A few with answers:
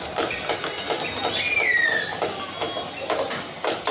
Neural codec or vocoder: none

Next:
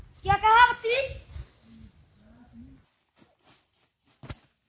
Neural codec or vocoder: none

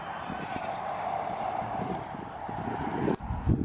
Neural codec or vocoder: none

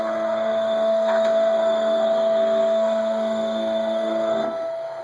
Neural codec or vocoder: codec, SNAC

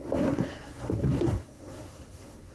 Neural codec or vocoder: codec, SNAC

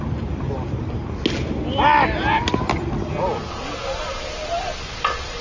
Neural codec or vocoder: none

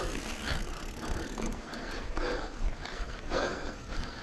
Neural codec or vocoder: codec, SNAC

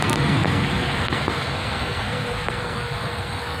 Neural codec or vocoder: codec, SNAC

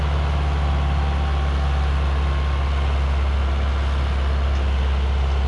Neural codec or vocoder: none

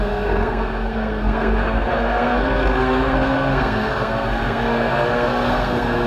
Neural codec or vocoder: codec, SNAC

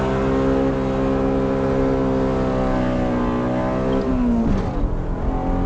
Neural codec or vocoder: none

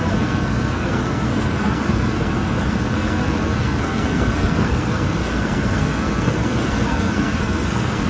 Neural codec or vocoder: codec, SNAC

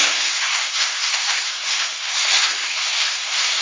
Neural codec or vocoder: codec, SNAC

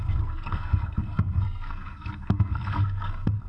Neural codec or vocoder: codec, SNAC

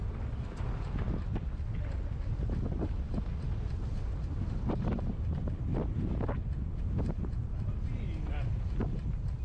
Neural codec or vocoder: none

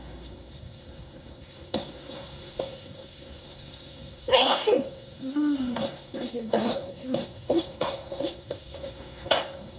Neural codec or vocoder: codec, SNAC